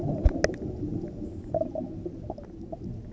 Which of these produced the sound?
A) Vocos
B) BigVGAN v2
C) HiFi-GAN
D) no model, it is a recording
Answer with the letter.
D